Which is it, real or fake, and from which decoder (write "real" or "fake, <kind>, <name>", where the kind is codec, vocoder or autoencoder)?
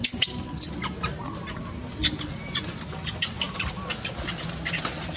real